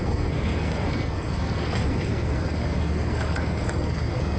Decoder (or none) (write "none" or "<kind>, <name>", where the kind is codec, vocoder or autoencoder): codec, SNAC